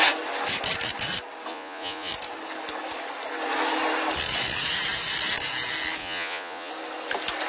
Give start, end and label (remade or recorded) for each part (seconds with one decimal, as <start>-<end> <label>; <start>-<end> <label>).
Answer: 0.0-1.5 recorded; 1.5-2.1 remade; 2.1-6.0 recorded; 6.0-6.7 remade; 6.7-7.5 recorded